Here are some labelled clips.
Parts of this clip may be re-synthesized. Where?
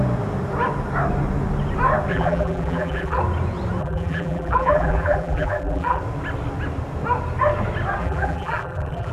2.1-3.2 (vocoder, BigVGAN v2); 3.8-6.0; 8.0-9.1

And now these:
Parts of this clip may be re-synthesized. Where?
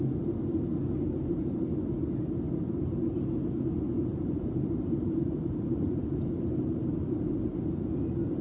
4.1-7.1 (vocoder, BigVGAN v2)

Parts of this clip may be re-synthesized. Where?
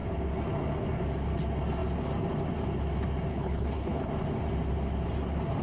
3.3-4.1 (codec, HILCodec)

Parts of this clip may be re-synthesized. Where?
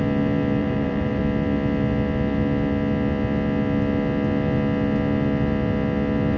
0.6-1.2 (vocoder, BigVGAN v2)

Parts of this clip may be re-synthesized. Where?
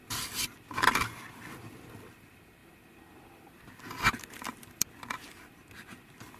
none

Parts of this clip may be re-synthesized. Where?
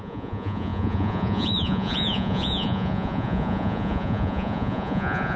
0.0-5.4 (vocoder, Vocos)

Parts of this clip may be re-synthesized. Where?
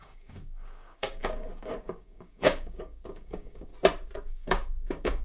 0.0-3.7 (codec, DAC); 4.3-5.2